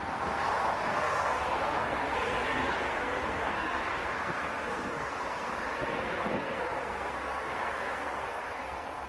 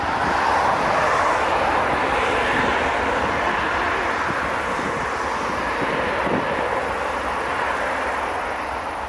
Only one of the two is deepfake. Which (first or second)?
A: first